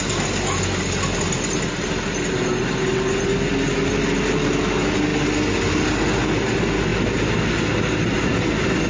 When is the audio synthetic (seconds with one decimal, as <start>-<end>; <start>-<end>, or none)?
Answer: none